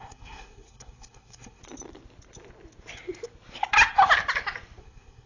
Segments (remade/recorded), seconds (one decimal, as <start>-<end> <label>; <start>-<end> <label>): 0.0-1.6 remade; 1.6-4.8 recorded; 4.8-5.3 remade